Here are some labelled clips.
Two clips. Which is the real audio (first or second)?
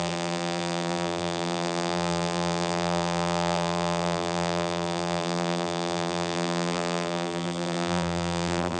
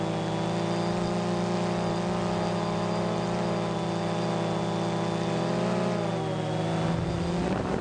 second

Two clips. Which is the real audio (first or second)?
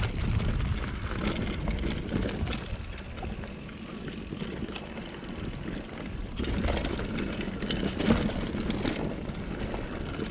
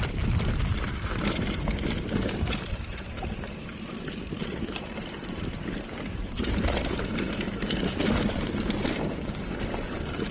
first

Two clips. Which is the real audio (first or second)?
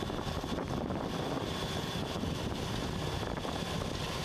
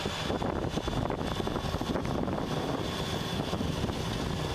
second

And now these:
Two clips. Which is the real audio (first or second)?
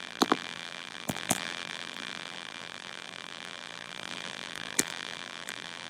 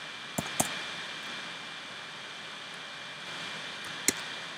second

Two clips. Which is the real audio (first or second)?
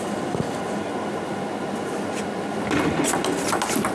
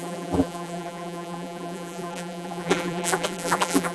first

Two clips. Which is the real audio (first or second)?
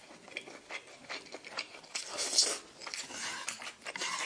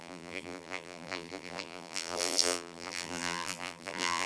first